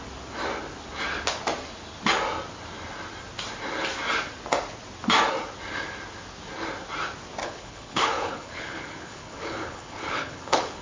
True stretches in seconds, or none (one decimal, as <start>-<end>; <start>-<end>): 0.0-7.4